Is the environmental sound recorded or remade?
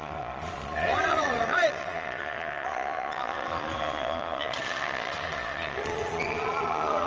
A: remade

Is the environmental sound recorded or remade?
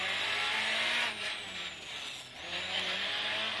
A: recorded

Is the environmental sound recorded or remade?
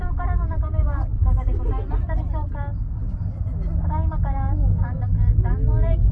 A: recorded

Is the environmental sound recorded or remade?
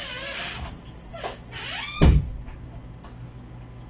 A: recorded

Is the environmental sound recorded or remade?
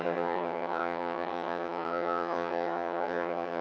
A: remade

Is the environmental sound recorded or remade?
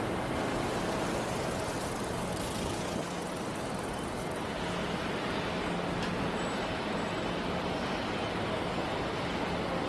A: recorded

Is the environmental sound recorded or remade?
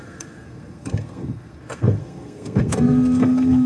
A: remade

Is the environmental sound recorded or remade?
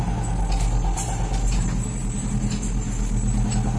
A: recorded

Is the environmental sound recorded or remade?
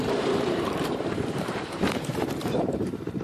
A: remade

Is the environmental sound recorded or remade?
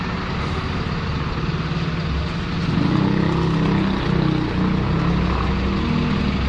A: recorded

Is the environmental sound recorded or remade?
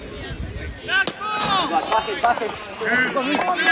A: recorded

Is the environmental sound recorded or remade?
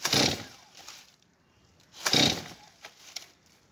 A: recorded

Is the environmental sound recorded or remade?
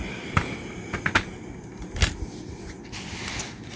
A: recorded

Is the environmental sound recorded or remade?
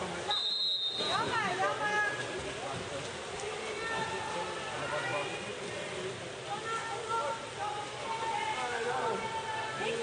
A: recorded